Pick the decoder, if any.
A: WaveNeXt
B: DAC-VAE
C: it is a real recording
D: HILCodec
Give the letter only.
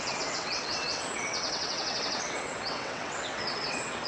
A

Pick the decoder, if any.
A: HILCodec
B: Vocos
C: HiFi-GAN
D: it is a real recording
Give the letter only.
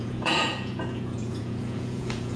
B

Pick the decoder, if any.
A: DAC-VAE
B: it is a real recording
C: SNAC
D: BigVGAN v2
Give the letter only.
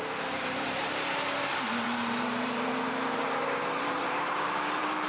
D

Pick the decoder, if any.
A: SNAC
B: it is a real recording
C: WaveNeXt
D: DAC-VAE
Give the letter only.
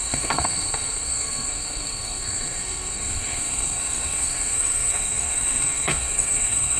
A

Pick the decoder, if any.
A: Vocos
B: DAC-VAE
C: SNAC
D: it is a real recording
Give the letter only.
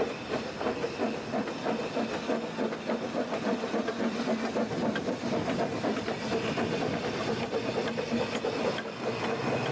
D